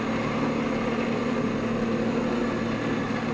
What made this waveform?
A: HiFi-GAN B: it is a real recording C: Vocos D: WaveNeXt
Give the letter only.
B